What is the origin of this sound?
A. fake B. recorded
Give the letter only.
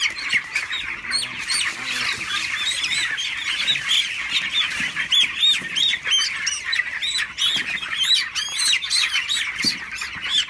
B